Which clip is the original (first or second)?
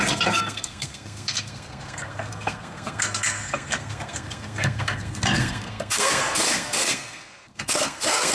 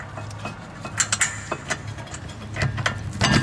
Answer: second